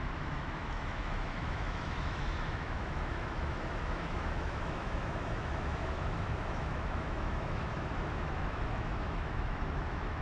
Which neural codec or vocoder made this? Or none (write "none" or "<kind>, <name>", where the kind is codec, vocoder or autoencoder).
autoencoder, DAC-VAE